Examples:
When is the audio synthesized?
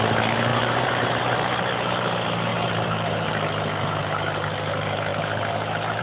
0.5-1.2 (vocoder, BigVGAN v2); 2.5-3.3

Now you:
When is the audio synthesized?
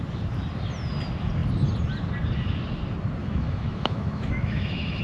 3.2-5.0 (autoencoder, DAC-VAE)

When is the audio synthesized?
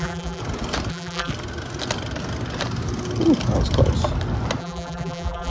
0.0-0.4 (vocoder, BigVGAN v2); 0.9-1.3; 4.6-5.5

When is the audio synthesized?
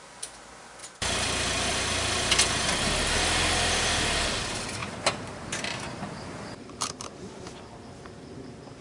0.8-2.1 (vocoder, BigVGAN v2); 4.8-8.8